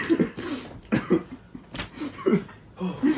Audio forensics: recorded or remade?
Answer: recorded